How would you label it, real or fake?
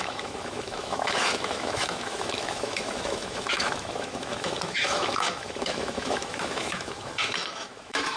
fake